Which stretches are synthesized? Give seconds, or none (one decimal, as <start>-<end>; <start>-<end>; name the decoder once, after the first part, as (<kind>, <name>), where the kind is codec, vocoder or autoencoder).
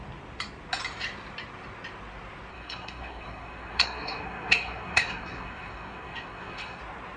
2.5-6.8 (codec, SNAC)